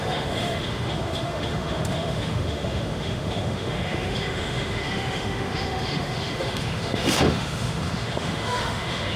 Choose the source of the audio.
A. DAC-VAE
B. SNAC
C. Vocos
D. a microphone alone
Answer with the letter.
A